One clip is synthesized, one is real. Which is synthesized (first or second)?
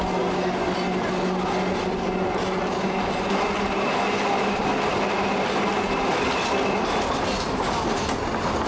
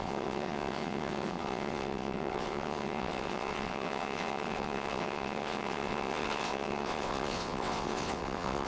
second